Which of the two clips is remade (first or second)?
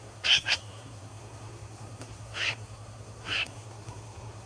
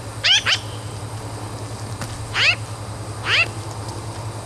first